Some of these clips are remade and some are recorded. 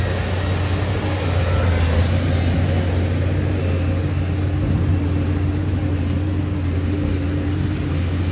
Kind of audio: recorded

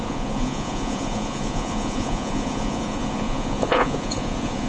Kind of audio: remade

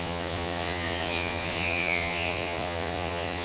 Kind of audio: remade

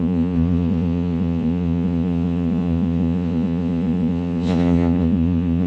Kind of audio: remade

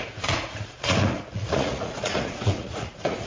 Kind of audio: remade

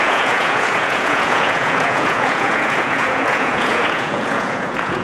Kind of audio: remade